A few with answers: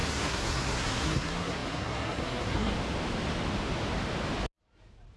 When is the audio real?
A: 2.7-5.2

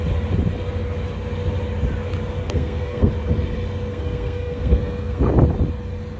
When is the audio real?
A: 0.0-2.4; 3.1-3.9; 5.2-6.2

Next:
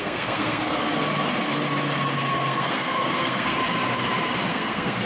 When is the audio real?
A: 0.9-2.1; 3.6-4.5

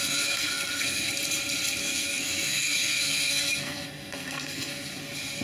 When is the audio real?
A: 1.1-1.8; 5.0-5.4

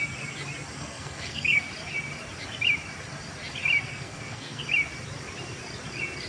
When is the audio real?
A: 0.0-0.8; 1.7-3.8; 4.7-6.3